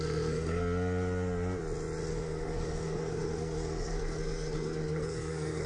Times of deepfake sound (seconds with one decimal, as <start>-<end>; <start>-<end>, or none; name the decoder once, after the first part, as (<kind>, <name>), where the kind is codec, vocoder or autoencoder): 0.0-0.6 (codec, SNAC); 2.1-5.7